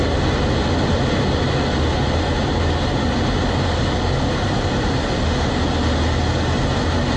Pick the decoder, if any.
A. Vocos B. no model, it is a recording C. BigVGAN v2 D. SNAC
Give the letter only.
B